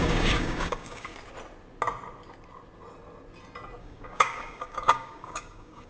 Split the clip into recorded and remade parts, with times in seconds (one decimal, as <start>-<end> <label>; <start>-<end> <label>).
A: 0.0-1.1 remade; 1.1-3.8 recorded; 3.8-5.9 remade